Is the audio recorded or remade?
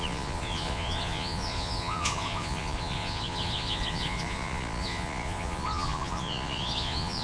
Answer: remade